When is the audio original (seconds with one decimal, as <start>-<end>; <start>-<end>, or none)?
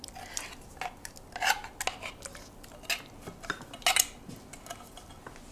0.0-5.5